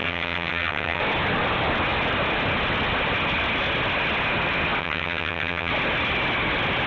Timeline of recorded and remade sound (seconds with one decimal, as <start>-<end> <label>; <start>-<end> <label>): 0.0-1.0 remade; 1.0-4.8 recorded; 4.8-5.7 remade; 5.7-6.9 recorded